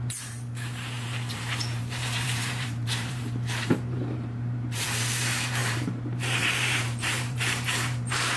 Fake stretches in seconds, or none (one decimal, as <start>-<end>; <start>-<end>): 0.0-8.4